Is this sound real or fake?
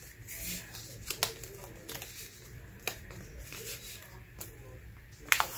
real